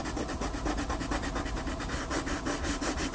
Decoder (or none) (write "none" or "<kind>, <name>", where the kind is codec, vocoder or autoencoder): none